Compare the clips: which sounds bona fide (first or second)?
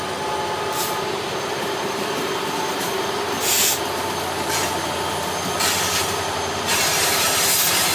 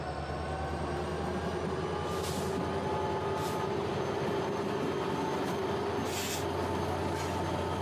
second